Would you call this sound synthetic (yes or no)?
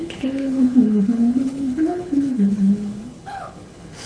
yes